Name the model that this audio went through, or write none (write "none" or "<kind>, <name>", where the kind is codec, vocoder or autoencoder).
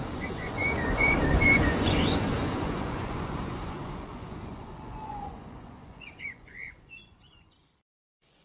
vocoder, Vocos